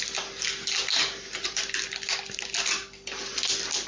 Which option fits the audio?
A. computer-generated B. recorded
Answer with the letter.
B